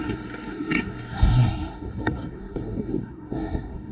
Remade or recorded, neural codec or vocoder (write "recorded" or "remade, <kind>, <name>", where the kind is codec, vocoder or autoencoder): remade, codec, SNAC